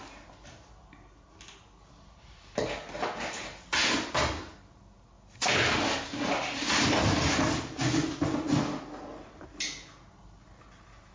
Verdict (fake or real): real